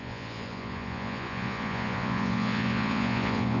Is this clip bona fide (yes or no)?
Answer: no